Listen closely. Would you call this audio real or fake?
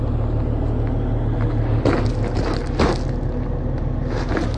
real